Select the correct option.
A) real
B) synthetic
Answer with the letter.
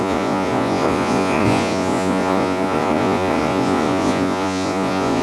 B